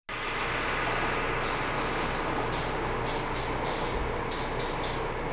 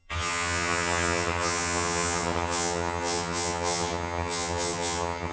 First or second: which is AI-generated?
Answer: second